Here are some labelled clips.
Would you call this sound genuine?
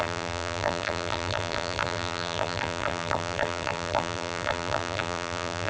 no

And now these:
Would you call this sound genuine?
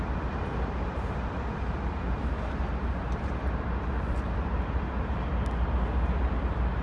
no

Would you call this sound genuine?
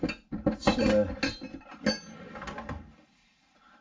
yes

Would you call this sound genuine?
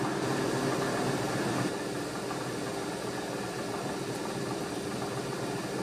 yes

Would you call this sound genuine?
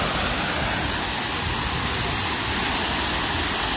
yes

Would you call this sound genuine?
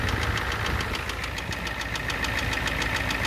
yes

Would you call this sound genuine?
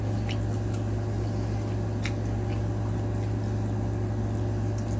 yes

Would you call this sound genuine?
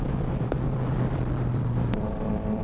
no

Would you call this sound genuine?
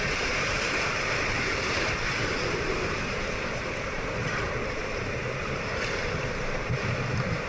no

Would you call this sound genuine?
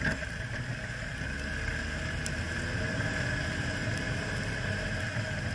yes